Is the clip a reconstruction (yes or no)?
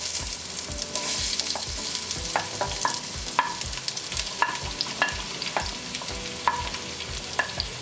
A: no